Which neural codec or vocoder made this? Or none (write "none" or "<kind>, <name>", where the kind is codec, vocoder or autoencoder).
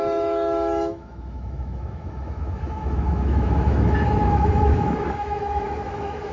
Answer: autoencoder, DAC-VAE